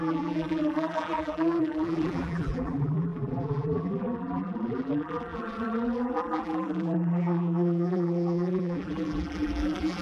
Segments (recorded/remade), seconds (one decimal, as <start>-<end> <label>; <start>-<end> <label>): 0.0-10.0 remade